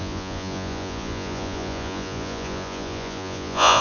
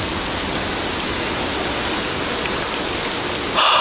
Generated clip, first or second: first